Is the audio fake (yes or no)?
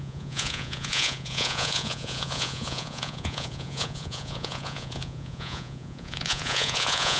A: yes